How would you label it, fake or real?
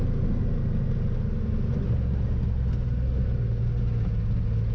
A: real